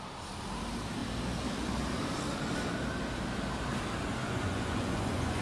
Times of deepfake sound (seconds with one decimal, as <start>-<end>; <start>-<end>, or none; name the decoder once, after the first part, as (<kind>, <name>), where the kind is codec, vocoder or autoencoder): 4.2-5.4 (vocoder, Vocos)